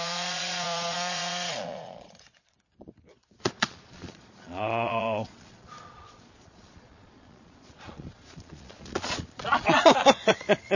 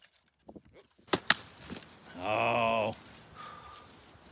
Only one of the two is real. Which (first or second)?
second